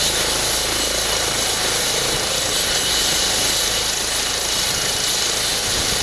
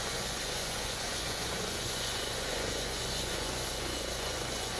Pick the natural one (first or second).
first